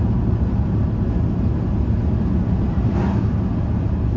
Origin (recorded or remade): recorded